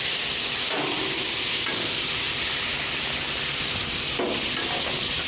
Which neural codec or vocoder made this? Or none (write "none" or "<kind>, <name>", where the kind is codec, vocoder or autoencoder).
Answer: none